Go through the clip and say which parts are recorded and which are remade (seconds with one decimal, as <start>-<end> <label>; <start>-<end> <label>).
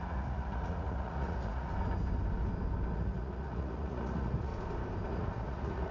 0.0-1.7 remade; 1.7-2.9 recorded; 2.9-4.5 remade; 4.5-5.1 recorded; 5.1-5.9 remade